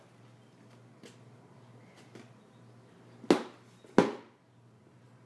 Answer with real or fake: real